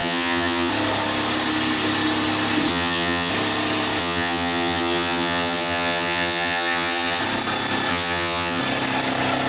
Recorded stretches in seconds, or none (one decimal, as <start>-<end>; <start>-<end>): 0.7-2.7; 3.3-4.0; 7.2-7.9; 8.6-9.5